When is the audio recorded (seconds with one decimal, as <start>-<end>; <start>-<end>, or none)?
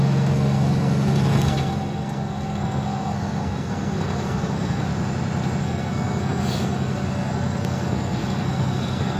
4.9-5.6